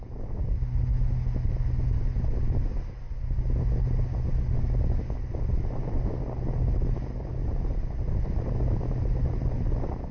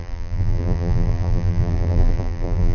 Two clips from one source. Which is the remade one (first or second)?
second